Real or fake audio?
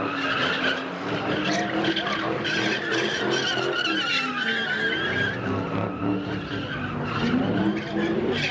real